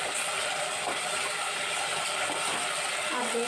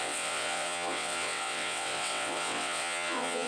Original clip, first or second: first